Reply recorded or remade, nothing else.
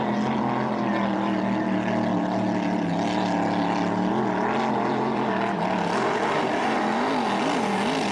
recorded